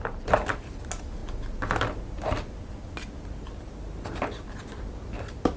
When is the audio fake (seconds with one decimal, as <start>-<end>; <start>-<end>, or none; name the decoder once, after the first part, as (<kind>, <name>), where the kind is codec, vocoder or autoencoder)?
none